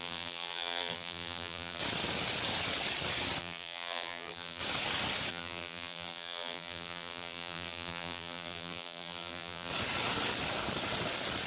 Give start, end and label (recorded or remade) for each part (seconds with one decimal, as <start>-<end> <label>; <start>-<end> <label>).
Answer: 0.0-1.8 remade; 1.8-3.4 recorded; 3.4-4.6 remade; 4.6-5.3 recorded; 5.3-9.7 remade; 9.7-11.5 recorded